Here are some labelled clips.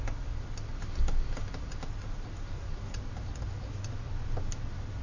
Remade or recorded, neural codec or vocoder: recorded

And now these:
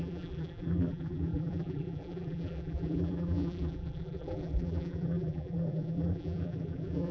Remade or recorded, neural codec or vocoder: remade, vocoder, BigVGAN v2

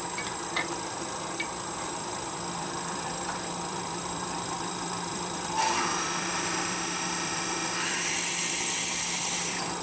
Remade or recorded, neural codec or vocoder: remade, vocoder, BigVGAN v2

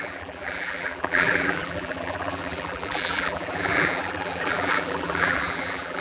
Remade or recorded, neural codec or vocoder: remade, vocoder, BigVGAN v2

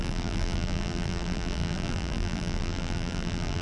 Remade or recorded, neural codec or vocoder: remade, vocoder, BigVGAN v2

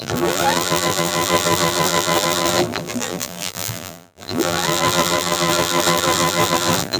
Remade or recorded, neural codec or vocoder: remade, vocoder, BigVGAN v2